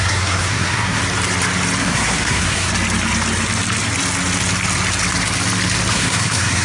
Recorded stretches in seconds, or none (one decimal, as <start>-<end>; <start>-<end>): 1.0-1.8; 2.7-5.9